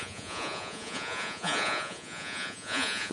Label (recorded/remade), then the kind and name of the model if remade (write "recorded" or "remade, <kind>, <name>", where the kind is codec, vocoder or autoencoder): remade, vocoder, Vocos